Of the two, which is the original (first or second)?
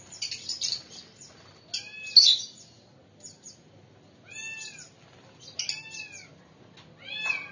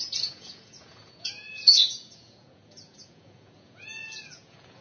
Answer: first